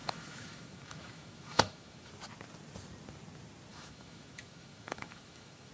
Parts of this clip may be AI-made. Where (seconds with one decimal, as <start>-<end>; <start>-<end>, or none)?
0.0-2.1; 3.7-5.7